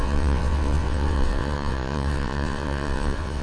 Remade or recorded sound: remade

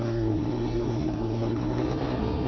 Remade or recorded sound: remade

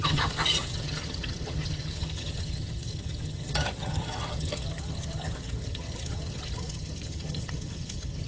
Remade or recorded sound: remade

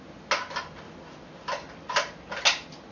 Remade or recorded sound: recorded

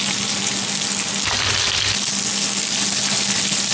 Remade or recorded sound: recorded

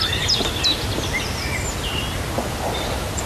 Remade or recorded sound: recorded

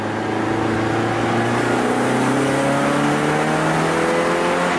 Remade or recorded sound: recorded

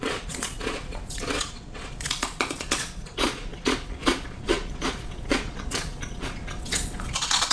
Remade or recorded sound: remade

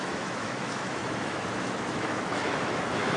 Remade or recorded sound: remade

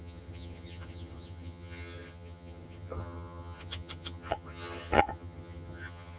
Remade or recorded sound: remade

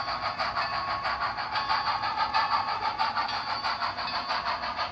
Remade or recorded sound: recorded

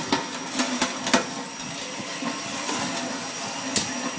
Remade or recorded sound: recorded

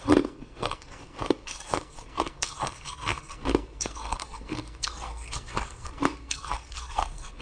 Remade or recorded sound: remade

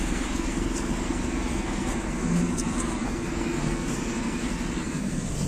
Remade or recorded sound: remade